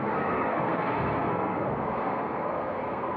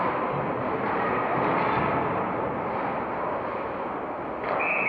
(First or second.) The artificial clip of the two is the first